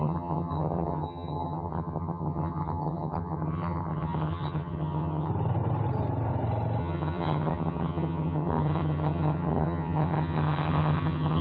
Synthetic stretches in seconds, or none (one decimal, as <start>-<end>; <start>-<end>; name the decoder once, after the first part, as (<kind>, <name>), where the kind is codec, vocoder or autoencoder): 0.0-5.3 (vocoder, HiFi-GAN); 6.8-11.4